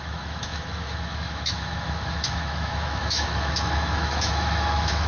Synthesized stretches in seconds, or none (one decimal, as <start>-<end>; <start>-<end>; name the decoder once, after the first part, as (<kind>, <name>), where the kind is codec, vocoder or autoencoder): 0.0-5.1 (autoencoder, DAC-VAE)